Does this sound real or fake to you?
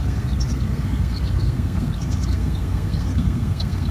fake